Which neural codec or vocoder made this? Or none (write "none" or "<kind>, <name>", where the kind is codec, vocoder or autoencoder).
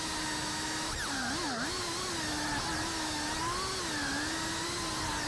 none